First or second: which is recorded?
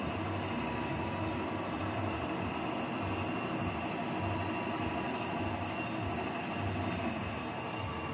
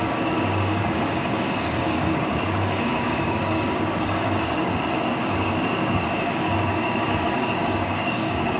first